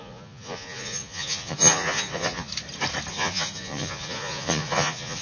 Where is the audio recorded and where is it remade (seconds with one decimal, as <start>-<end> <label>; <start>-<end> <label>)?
0.0-2.5 remade; 2.5-3.1 recorded; 3.1-5.2 remade